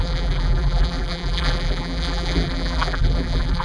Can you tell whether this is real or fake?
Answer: fake